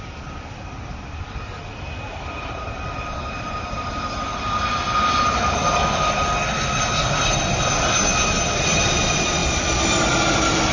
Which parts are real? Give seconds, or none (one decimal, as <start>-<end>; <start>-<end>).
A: none